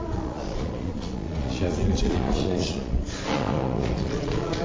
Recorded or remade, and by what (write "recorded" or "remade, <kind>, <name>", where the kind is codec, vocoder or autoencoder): remade, vocoder, Vocos